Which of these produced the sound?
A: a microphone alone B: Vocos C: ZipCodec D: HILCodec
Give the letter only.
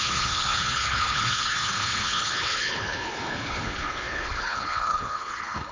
D